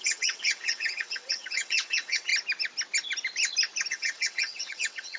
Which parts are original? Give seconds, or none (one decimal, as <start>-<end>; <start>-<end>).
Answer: 2.3-3.9